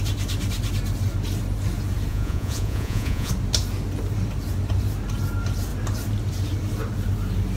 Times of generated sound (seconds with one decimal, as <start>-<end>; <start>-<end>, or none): 2.1-3.3